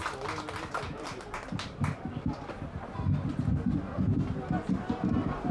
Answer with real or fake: real